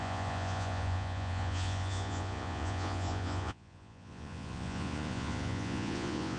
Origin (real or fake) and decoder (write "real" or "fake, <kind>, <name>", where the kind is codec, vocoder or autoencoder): fake, vocoder, Vocos